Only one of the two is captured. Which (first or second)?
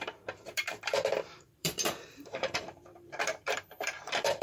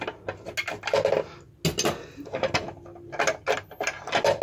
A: second